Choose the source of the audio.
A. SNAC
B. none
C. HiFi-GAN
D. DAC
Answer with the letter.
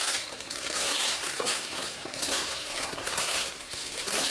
A